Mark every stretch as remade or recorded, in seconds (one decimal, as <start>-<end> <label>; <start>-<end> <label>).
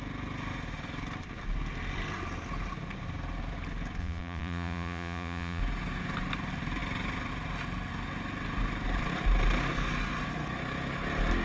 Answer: 0.0-4.0 recorded; 4.0-5.6 remade; 5.6-11.4 recorded